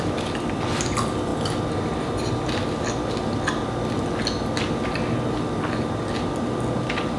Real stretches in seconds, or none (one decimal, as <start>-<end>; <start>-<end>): 0.0-7.2